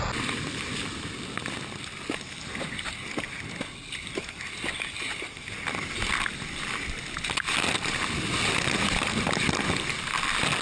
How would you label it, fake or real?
real